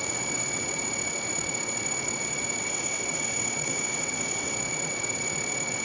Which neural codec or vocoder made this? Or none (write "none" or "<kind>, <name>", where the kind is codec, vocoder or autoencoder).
vocoder, WaveNeXt